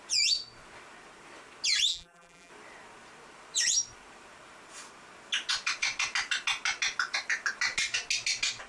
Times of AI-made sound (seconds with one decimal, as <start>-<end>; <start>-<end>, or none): 1.9-2.5